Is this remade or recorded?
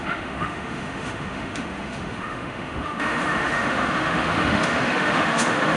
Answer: remade